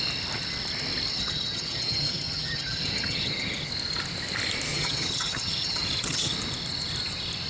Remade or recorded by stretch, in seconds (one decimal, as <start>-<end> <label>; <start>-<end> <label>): 0.0-1.1 recorded; 1.1-3.7 remade; 3.7-4.7 recorded; 4.7-6.3 remade; 6.3-7.5 recorded